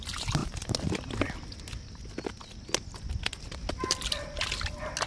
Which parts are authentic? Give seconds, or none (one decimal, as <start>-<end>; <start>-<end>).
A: 0.0-5.1